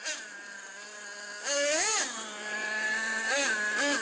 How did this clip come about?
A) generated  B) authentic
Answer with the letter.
B